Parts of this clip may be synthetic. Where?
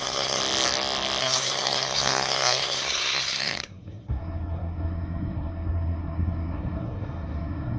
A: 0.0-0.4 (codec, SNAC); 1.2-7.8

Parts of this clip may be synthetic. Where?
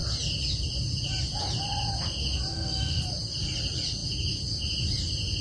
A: 2.5-3.0 (codec, SNAC)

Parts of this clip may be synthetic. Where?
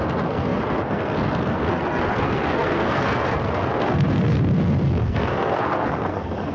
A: 0.0-6.5 (codec, SNAC)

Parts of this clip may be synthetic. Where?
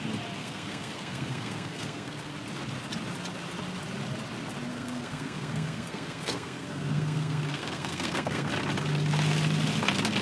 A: 0.4-2.3 (codec, SNAC); 4.7-8.5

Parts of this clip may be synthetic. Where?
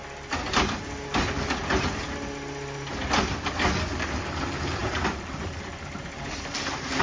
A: none